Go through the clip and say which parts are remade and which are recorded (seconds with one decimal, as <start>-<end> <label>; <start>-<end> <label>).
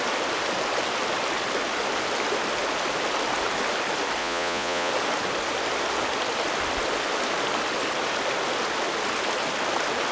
0.0-4.2 recorded; 4.2-4.9 remade; 4.9-10.1 recorded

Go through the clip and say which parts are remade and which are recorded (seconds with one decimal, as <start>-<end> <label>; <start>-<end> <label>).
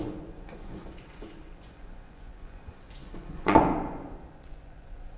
0.0-5.2 remade